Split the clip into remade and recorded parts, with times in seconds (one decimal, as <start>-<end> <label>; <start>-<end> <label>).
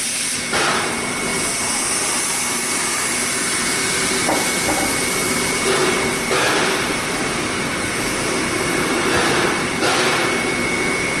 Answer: 0.0-11.2 recorded